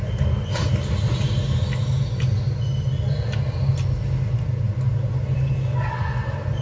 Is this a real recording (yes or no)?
yes